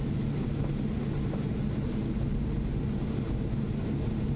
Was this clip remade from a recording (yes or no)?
no